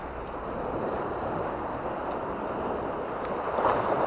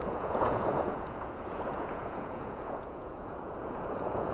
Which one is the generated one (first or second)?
second